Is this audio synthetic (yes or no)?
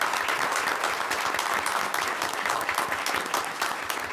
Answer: no